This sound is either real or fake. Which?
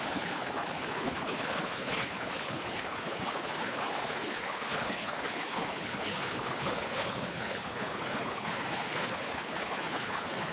fake